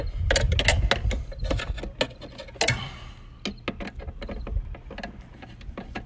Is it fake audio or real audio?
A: real